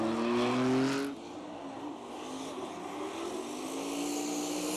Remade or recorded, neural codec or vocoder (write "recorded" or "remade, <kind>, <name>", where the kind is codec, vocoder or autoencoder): recorded